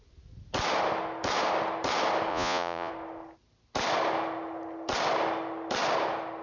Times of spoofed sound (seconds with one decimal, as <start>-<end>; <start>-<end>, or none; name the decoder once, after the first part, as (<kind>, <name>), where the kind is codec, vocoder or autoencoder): 2.3-2.9 (vocoder, Vocos)